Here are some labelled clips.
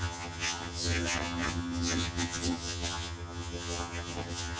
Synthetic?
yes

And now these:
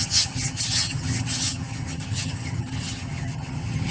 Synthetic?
yes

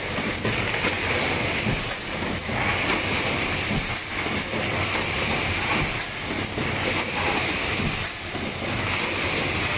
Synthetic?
no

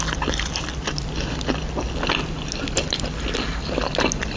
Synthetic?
no